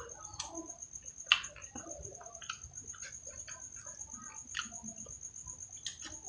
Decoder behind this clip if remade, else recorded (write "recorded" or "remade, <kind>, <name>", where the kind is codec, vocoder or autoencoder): recorded